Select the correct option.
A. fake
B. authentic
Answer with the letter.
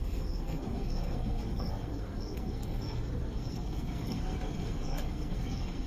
A